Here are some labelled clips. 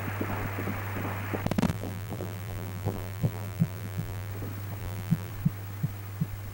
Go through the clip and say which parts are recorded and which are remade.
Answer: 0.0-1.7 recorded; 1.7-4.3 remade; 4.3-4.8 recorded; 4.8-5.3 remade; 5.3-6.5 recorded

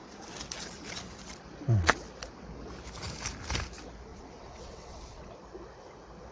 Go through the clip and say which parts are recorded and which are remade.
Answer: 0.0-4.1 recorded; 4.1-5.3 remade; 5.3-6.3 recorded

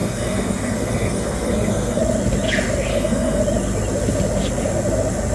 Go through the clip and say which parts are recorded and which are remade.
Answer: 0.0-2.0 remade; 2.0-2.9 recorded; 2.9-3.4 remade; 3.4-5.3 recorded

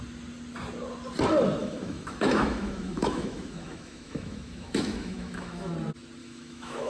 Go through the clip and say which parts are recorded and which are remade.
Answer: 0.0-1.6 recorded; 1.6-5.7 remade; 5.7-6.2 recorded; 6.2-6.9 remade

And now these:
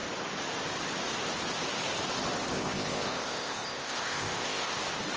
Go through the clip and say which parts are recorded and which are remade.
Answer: 0.0-2.5 recorded; 2.5-4.8 remade; 4.8-5.2 recorded